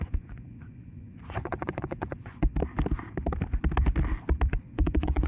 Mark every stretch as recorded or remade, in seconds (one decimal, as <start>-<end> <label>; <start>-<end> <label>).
0.0-2.5 remade; 2.5-4.5 recorded; 4.5-5.3 remade